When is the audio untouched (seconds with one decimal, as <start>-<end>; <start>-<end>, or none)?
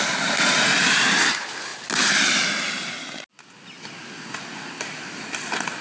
0.0-5.8